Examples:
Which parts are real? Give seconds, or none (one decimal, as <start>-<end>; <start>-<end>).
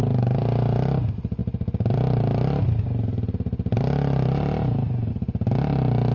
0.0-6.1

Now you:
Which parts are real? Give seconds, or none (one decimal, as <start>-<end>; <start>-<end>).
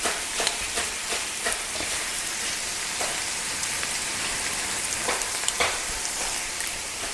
none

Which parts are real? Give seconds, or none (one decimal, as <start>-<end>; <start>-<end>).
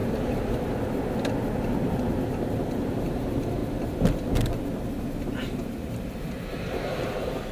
0.0-1.9; 3.6-4.9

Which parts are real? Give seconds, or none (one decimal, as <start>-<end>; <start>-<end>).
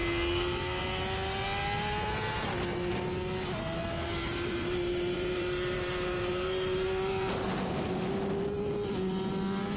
0.0-4.2; 8.1-9.8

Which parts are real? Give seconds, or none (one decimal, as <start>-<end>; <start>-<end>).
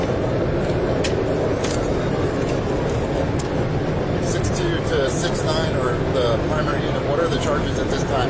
0.0-6.7; 7.4-8.3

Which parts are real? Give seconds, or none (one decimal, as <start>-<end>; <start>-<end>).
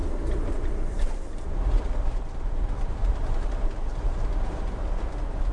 1.5-3.0; 4.4-5.5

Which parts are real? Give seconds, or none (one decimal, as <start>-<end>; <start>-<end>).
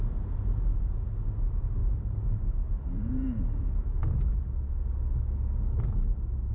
0.0-1.8; 3.4-6.5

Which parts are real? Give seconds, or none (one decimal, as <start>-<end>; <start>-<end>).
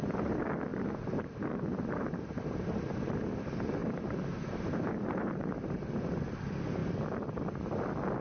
0.0-0.7; 3.1-3.8; 5.8-8.2